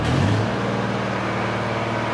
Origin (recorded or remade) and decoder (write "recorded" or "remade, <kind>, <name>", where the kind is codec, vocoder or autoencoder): recorded